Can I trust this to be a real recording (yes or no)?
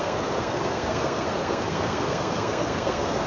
no